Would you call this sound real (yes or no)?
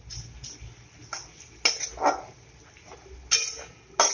yes